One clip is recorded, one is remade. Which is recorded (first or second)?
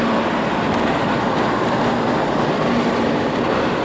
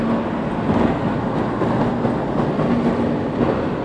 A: second